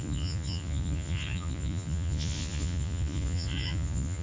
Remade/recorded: remade